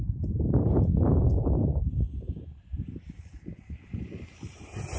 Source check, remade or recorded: remade